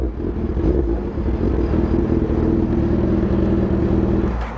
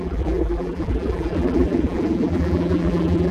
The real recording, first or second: first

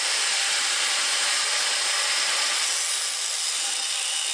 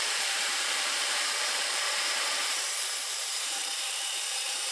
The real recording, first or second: first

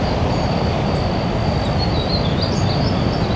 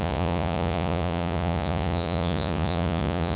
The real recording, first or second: first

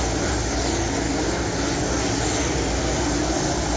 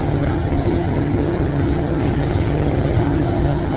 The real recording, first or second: first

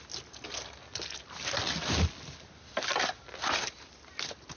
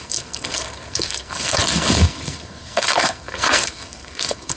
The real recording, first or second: first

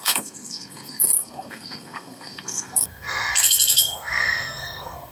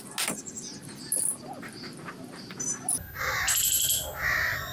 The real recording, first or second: second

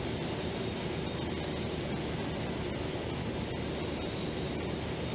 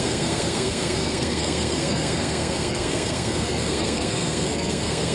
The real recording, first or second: first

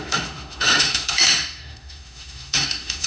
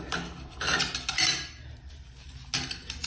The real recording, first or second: second